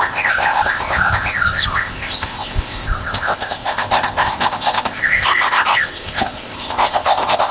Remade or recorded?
remade